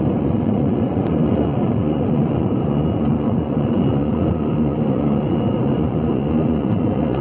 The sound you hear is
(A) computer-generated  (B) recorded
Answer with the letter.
A